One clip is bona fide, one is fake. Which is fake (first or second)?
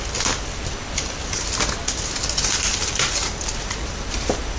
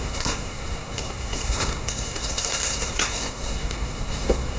second